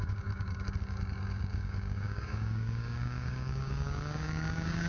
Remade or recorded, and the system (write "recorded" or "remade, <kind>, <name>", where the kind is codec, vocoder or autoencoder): remade, codec, DAC